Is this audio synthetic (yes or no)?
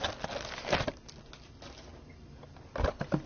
no